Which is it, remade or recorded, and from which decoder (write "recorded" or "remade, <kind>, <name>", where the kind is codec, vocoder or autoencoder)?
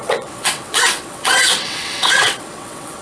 remade, vocoder, WaveNeXt